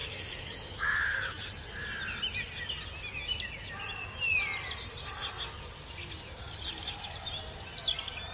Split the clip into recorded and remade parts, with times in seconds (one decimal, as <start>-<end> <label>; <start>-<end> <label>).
0.0-1.5 remade; 1.5-8.3 recorded